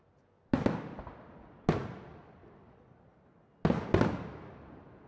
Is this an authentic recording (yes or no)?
yes